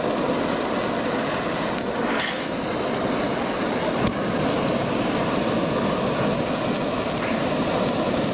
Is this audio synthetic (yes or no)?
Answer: no